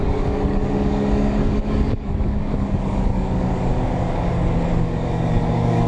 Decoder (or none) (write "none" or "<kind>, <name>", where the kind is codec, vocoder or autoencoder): codec, DAC